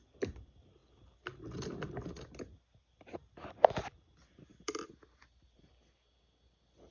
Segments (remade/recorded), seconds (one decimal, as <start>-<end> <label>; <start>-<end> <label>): 0.0-6.9 recorded